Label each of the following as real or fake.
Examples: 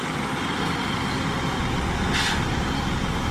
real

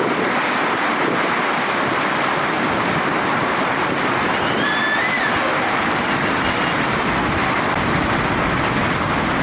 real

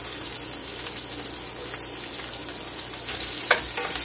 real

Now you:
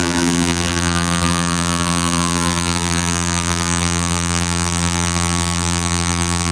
fake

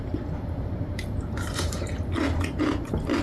fake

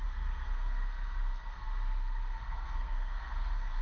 fake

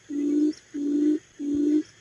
real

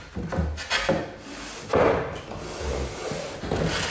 real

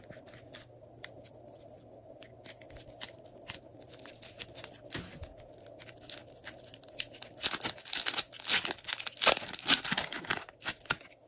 real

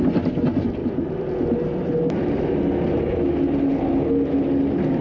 real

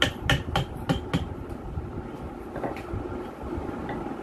real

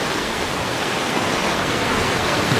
fake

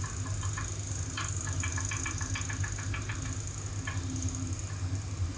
real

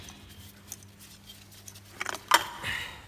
real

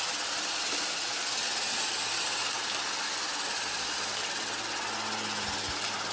real